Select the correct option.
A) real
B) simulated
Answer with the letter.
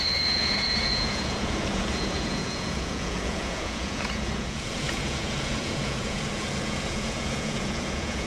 B